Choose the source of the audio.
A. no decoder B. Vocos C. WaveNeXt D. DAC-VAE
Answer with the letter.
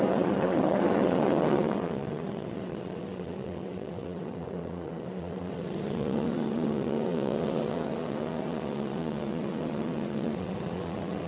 C